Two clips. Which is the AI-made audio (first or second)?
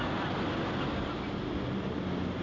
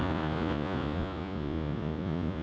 second